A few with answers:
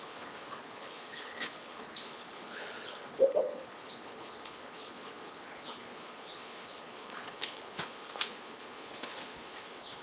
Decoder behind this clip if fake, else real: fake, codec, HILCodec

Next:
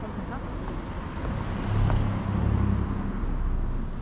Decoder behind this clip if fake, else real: real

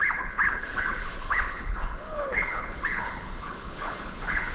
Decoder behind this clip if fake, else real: fake, codec, HILCodec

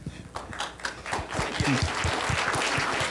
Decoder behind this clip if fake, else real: real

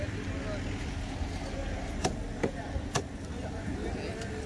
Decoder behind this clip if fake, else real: real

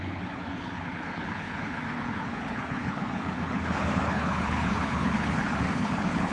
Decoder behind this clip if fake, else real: fake, codec, HILCodec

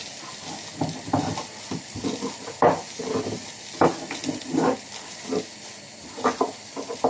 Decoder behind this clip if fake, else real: real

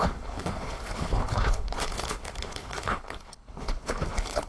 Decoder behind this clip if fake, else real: fake, codec, HILCodec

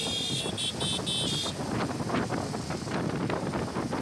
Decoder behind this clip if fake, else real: real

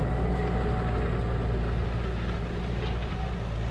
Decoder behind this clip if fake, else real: real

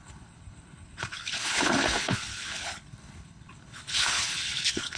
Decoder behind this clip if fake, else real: fake, codec, HILCodec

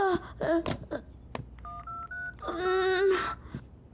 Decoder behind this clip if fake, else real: real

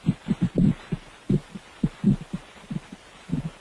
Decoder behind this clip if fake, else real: real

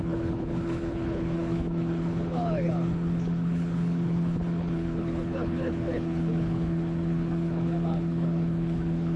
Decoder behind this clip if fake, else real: fake, codec, HILCodec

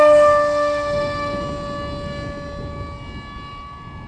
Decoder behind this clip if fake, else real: real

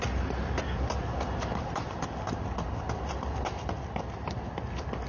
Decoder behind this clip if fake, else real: real